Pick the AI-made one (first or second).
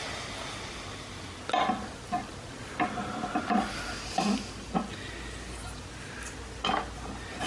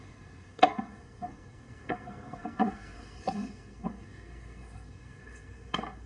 second